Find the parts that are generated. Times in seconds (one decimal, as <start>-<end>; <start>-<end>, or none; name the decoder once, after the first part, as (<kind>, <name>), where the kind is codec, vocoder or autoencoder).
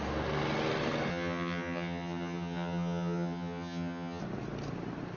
1.1-4.2 (vocoder, HiFi-GAN)